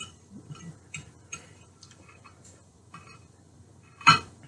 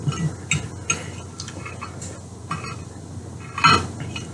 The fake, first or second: first